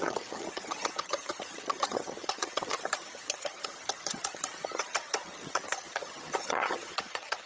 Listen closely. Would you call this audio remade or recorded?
remade